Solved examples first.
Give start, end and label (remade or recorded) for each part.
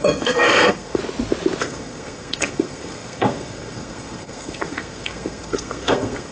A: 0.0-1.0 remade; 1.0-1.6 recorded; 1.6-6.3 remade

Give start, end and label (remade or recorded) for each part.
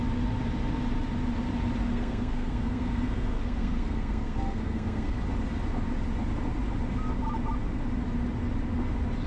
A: 0.0-1.9 recorded; 1.9-5.2 remade; 5.2-9.3 recorded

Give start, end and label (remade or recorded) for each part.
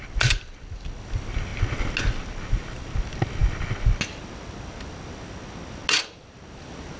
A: 0.0-7.0 recorded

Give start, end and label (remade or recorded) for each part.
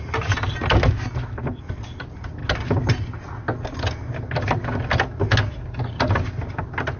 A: 0.0-7.0 recorded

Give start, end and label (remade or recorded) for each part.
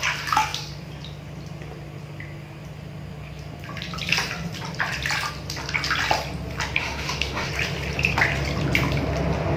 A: 0.0-6.8 recorded; 6.8-7.5 remade; 7.5-9.6 recorded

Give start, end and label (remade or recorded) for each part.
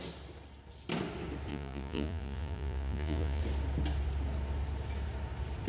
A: 0.0-1.5 recorded; 1.5-3.4 remade; 3.4-5.7 recorded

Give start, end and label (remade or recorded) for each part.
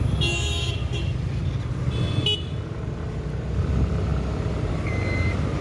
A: 0.0-5.6 recorded